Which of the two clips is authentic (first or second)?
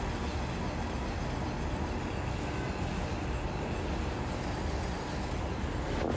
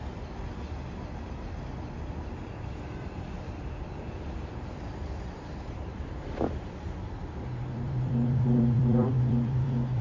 first